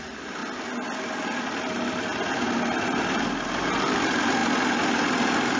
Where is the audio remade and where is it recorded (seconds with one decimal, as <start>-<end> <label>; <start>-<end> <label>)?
0.0-5.6 recorded